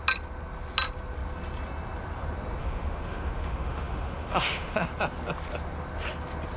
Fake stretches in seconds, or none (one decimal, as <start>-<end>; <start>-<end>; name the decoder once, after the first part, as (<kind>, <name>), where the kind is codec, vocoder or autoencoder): 2.6-4.9 (autoencoder, DAC-VAE)